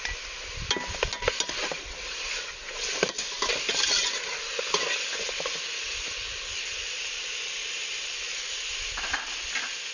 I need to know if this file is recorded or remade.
recorded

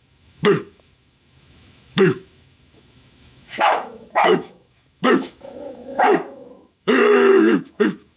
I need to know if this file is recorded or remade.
remade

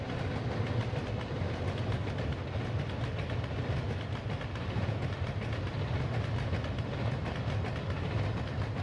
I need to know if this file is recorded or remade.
recorded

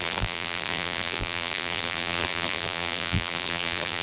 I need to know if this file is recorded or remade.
remade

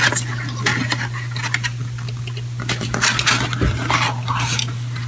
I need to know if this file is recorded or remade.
recorded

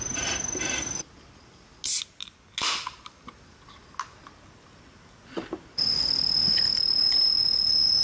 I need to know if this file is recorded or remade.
recorded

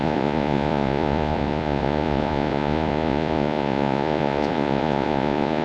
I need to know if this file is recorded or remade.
remade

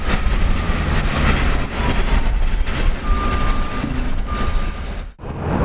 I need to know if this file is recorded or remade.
recorded